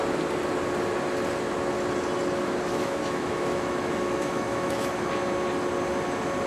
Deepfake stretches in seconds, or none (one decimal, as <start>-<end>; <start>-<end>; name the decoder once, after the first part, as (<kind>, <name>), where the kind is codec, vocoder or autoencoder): 2.7-5.1 (autoencoder, DAC-VAE)